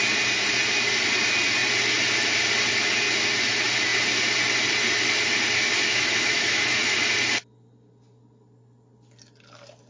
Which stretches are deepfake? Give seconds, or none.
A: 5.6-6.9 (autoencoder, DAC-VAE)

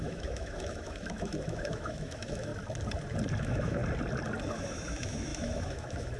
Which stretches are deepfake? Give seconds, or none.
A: 0.0-2.5 (autoencoder, DAC-VAE); 3.4-3.8; 4.7-6.2